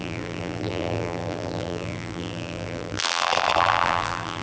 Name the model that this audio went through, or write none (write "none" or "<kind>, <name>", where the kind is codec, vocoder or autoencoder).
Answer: vocoder, BigVGAN v2